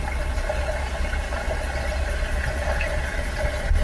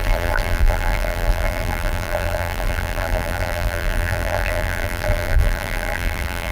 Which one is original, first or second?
first